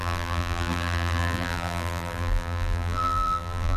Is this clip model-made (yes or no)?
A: yes